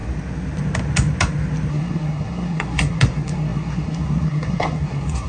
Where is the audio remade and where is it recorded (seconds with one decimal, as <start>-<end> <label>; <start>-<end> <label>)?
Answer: 0.0-1.7 recorded; 1.7-5.3 remade